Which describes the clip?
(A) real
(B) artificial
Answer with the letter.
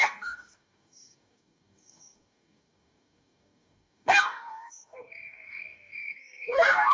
B